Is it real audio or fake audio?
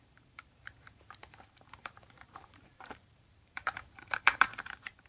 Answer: fake